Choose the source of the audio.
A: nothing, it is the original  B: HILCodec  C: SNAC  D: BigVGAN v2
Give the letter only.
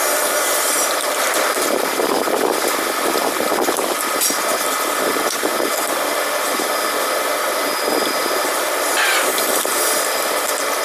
D